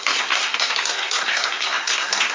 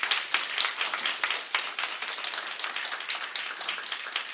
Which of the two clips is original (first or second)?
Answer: second